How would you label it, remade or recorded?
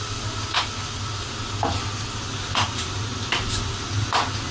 recorded